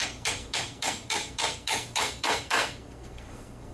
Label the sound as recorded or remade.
remade